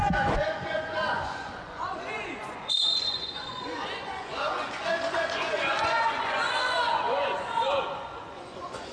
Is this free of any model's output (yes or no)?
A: no